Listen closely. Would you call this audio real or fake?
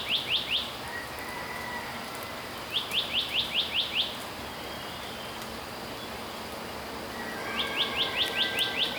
real